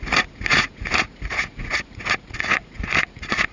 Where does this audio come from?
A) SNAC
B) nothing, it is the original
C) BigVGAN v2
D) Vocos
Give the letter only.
D